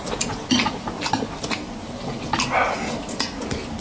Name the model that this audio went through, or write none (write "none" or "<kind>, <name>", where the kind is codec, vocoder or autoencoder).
none